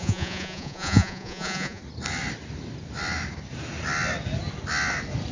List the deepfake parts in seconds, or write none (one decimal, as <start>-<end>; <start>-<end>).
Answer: 0.0-1.8